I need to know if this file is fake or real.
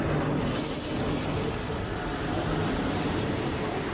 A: real